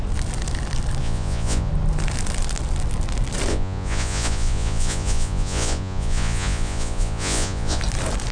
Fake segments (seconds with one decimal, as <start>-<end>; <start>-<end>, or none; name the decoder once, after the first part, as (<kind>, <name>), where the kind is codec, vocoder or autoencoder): 1.0-1.7 (vocoder, Vocos); 3.5-7.8